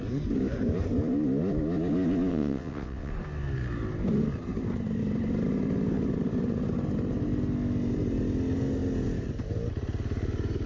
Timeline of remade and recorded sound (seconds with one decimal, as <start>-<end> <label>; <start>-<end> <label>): 0.0-2.3 recorded; 2.3-3.1 remade; 3.1-10.7 recorded